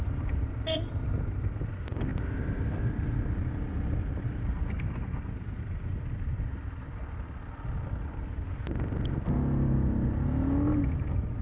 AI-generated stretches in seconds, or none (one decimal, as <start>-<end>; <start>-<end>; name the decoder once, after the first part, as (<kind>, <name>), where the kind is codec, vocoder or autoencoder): none